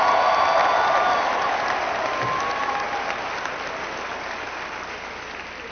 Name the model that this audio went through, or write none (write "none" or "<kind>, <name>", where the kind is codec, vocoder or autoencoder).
none